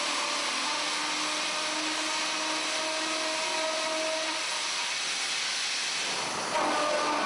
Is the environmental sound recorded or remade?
recorded